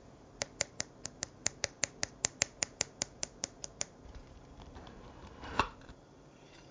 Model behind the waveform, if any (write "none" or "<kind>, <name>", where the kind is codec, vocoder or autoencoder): vocoder, BigVGAN v2